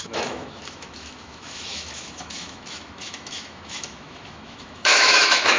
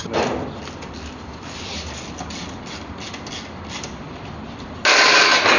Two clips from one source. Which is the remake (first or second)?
first